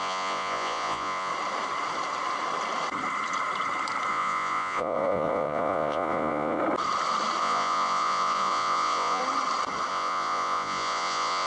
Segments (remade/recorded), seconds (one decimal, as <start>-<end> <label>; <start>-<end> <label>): 0.0-1.3 remade; 1.3-4.1 recorded; 4.1-6.6 remade; 6.6-7.4 recorded; 7.4-9.2 remade; 9.2-9.9 recorded; 9.9-11.5 remade